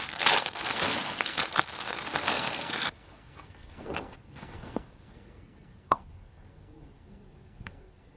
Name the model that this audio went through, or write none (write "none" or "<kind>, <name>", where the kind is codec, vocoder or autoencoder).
codec, SNAC